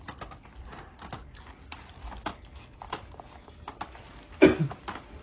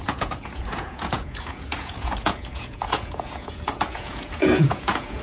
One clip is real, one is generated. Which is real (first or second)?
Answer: first